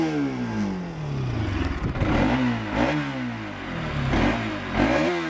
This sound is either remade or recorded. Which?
recorded